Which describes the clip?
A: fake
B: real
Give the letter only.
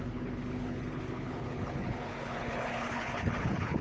A